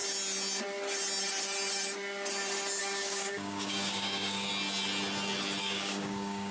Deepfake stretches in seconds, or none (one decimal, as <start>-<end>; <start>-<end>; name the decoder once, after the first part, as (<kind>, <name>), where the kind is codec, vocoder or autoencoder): 2.8-4.5 (codec, DAC); 5.6-6.5